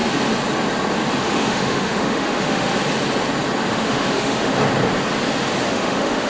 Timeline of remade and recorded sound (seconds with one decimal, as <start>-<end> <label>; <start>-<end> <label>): 0.0-1.2 recorded; 1.2-2.7 remade; 2.7-3.7 recorded; 3.7-4.5 remade; 4.5-5.7 recorded; 5.7-6.3 remade